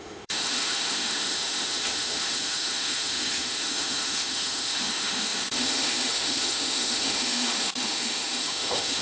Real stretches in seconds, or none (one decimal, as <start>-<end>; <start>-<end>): none